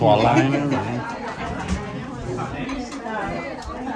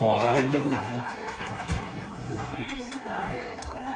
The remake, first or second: second